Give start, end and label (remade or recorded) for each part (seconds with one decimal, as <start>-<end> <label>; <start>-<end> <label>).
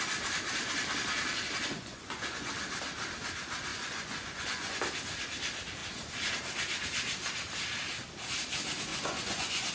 0.0-1.8 recorded; 1.8-2.5 remade; 2.5-3.7 recorded; 3.7-4.8 remade; 4.8-8.9 recorded; 8.9-9.7 remade